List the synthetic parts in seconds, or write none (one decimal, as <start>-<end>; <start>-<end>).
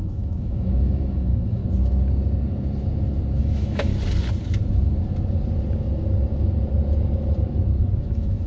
0.0-1.6; 3.4-3.9; 8.0-8.5